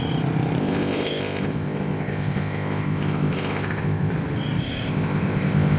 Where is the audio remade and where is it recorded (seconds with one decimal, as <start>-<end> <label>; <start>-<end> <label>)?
0.0-0.6 recorded; 0.6-4.1 remade; 4.1-4.6 recorded; 4.6-5.8 remade

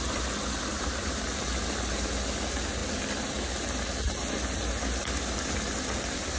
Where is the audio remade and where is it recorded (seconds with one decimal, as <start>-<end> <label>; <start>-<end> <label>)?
0.0-0.7 recorded; 0.7-1.3 remade; 1.3-6.4 recorded

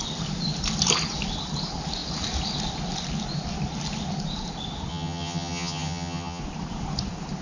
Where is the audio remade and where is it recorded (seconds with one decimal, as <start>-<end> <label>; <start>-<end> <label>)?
0.0-4.9 recorded; 4.9-6.4 remade; 6.4-7.4 recorded

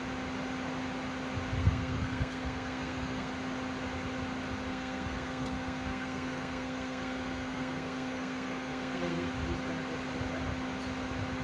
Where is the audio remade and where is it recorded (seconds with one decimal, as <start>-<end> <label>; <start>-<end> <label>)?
0.0-1.6 recorded; 1.6-3.3 remade; 3.3-4.7 recorded; 4.7-9.3 remade; 9.3-11.4 recorded

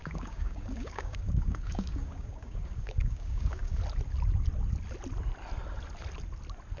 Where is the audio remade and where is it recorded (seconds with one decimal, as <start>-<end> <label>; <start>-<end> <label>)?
0.0-3.8 remade; 3.8-6.8 recorded

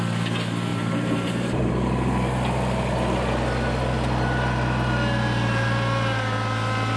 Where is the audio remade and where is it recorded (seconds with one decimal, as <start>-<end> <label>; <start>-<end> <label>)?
0.0-0.7 recorded; 0.7-1.7 remade; 1.7-7.0 recorded

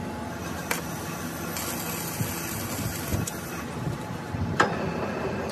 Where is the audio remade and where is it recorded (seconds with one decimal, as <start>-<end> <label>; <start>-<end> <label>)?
0.0-5.5 recorded